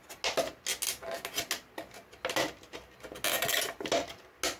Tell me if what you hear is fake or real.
real